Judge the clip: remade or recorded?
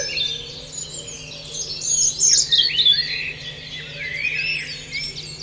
recorded